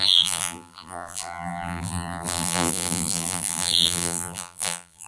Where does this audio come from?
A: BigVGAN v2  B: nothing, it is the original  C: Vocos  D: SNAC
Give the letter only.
A